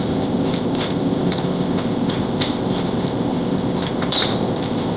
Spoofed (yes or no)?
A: yes